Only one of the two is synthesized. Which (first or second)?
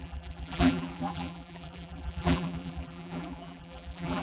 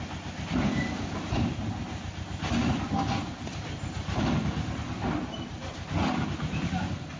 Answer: first